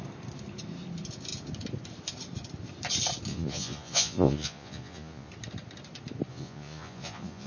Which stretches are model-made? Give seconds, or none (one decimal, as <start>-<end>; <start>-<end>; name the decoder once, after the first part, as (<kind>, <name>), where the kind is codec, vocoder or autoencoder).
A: 3.3-5.3 (vocoder, Vocos); 6.3-7.5